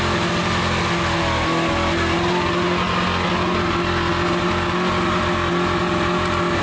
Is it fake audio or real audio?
real